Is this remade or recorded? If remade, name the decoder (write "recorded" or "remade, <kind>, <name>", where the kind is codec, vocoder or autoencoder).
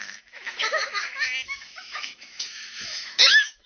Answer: remade, autoencoder, DAC-VAE